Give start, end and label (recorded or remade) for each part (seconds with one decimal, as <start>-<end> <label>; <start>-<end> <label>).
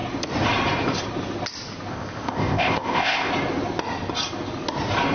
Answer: 0.0-1.9 recorded; 1.9-3.3 remade; 3.3-5.1 recorded